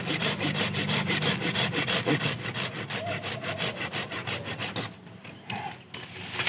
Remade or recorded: recorded